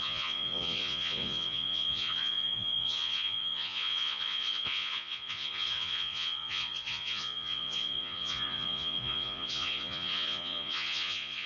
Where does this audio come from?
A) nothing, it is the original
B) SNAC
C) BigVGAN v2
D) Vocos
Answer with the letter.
D